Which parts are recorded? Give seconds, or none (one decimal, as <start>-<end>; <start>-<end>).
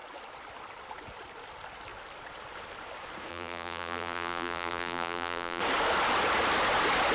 0.0-3.3; 5.6-7.1